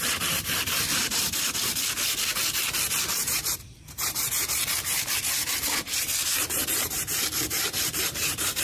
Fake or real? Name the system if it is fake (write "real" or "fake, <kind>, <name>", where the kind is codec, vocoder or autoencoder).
fake, vocoder, BigVGAN v2